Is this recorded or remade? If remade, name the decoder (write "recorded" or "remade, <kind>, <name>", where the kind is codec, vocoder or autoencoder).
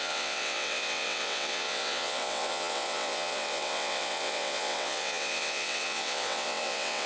remade, vocoder, WaveNeXt